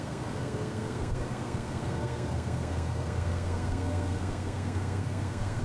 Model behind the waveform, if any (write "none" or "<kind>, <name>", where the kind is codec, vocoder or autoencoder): codec, SNAC